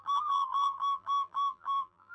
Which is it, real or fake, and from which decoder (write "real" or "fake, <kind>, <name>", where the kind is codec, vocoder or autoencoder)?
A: fake, vocoder, BigVGAN v2